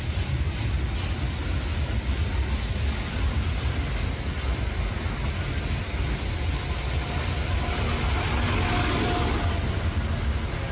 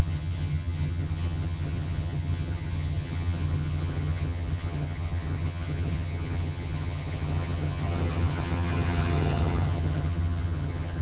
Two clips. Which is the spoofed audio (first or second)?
second